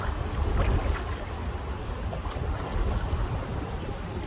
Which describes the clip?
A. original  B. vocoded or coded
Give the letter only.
A